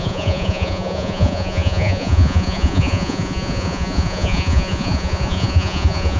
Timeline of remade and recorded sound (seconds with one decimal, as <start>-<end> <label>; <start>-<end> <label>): 0.0-6.2 remade